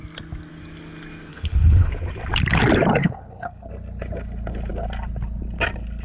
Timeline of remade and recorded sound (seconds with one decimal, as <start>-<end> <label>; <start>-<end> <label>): 0.0-1.3 recorded; 1.3-1.9 remade; 1.9-3.0 recorded; 3.0-3.7 remade; 3.7-6.0 recorded